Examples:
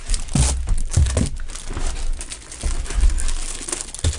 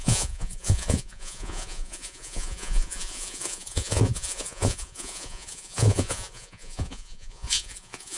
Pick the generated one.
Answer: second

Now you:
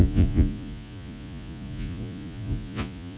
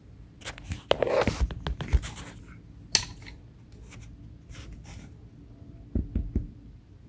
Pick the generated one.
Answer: first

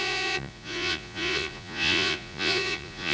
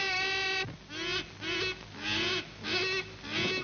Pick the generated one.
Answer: first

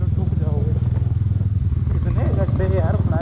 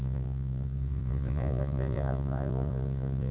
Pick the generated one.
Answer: second